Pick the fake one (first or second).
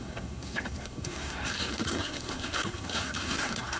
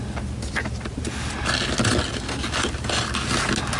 first